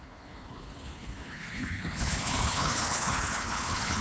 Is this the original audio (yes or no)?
no